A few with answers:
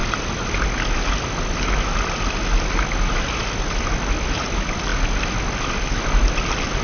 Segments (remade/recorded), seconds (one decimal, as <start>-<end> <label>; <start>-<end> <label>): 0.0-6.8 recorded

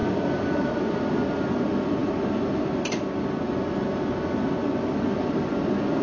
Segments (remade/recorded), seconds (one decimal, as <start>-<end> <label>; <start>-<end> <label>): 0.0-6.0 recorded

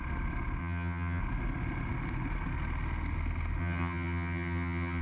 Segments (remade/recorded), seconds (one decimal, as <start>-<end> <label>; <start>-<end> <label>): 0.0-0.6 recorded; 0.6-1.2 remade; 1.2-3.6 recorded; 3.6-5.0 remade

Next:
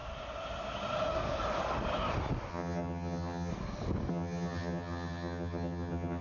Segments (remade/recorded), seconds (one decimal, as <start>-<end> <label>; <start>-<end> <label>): 0.0-2.5 recorded; 2.5-3.5 remade; 3.5-4.1 recorded; 4.1-6.2 remade

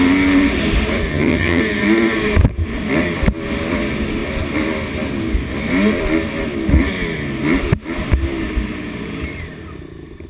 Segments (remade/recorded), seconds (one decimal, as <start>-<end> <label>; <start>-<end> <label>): 0.0-1.1 recorded; 1.1-1.6 remade; 1.6-10.3 recorded

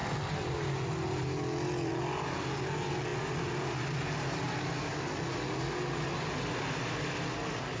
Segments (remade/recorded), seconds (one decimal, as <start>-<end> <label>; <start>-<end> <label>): 0.0-7.8 recorded

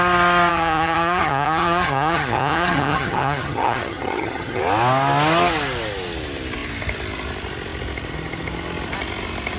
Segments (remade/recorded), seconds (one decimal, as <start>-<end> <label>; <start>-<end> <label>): 0.0-0.5 recorded; 0.5-4.6 remade; 4.6-9.6 recorded